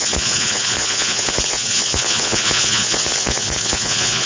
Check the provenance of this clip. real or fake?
fake